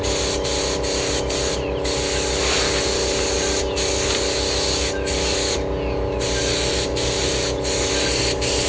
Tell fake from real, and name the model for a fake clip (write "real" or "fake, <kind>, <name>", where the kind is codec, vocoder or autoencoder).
real